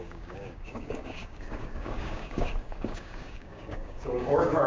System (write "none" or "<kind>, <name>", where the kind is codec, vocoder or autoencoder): codec, DAC